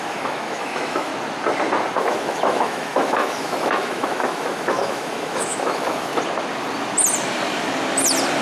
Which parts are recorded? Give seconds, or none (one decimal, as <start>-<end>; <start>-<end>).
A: 1.1-2.0; 6.1-8.4